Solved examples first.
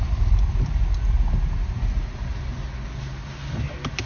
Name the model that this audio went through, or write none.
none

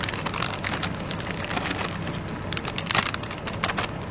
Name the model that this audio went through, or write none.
none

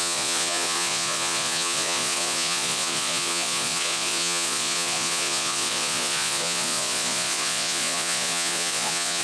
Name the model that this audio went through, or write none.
vocoder, Vocos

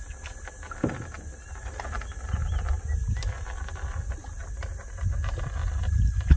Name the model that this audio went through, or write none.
none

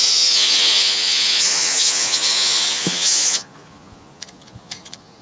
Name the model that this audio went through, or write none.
vocoder, Vocos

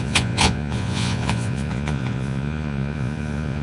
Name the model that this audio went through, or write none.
vocoder, Vocos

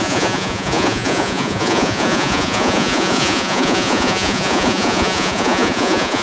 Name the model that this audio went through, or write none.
vocoder, Vocos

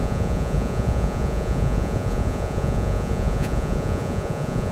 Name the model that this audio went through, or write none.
vocoder, Vocos